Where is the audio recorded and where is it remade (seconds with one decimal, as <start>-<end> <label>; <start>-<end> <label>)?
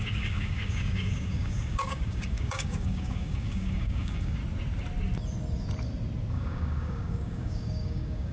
0.0-4.4 remade; 4.4-6.3 recorded; 6.3-8.3 remade